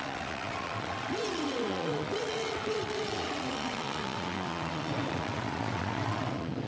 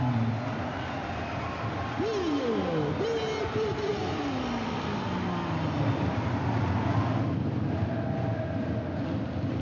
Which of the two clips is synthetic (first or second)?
first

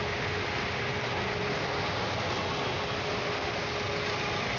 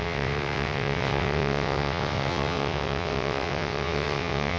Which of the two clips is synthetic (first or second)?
second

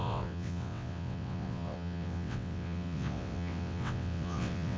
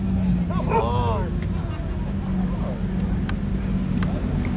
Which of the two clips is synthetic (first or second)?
first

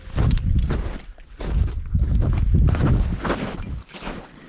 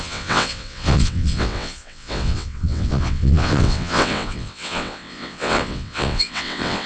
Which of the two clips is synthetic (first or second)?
second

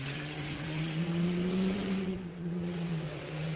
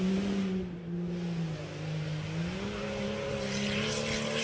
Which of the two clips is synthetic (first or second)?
first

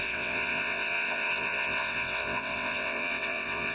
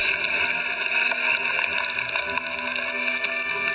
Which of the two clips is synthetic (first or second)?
first